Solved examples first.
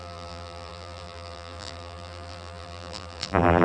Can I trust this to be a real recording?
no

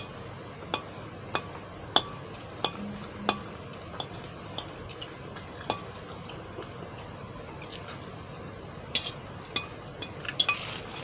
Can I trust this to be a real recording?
yes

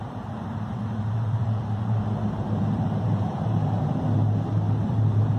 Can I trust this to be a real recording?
no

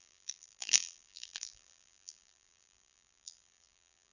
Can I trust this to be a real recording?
no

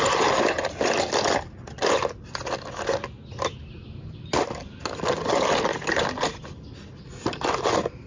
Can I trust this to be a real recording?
yes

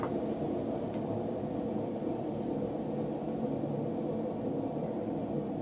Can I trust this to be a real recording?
yes